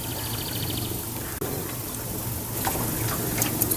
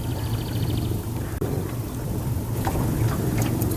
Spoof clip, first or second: second